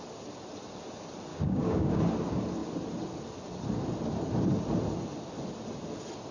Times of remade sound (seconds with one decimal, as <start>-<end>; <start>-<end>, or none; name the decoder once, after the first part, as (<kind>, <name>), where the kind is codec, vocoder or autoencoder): 1.3-2.0 (codec, DAC)